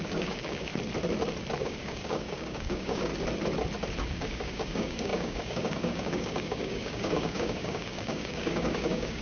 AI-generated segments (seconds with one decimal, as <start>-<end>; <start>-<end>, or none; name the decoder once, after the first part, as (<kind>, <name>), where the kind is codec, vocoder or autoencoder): 0.0-0.7 (codec, DAC); 1.6-3.1; 4.1-9.2

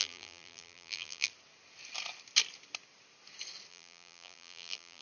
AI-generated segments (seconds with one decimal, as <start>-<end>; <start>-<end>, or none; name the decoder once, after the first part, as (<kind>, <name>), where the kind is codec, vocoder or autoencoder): 0.0-1.3 (vocoder, BigVGAN v2); 3.7-5.0

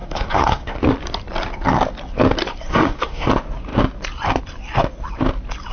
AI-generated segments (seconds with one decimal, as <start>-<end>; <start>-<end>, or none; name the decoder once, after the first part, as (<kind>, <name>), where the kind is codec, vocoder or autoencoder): 0.0-0.8 (codec, SNAC); 2.7-3.3

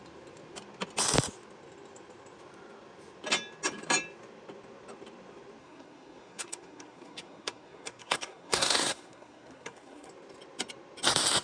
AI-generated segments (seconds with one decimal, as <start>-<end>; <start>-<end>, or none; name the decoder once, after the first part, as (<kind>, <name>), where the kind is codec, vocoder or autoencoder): 5.6-10.1 (codec, SNAC)

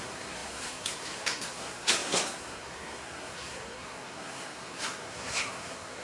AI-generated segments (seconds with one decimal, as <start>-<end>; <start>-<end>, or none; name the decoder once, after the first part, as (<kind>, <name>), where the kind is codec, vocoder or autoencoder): 0.0-6.0 (codec, SNAC)

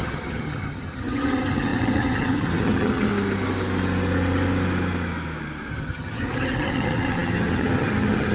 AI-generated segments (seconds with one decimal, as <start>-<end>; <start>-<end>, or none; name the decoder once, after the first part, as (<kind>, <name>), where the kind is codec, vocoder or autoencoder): 0.0-3.1 (vocoder, HiFi-GAN); 5.7-8.3

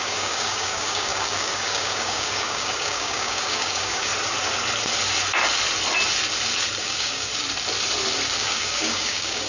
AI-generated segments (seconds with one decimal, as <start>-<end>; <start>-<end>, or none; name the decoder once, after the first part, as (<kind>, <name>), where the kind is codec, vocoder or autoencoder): 0.0-4.1 (codec, DAC); 6.8-7.3; 8.4-9.5

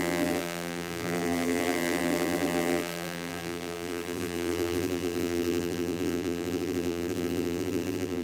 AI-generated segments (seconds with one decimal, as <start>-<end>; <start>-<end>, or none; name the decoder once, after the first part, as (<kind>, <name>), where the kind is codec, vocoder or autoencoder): 0.0-8.2 (vocoder, BigVGAN v2)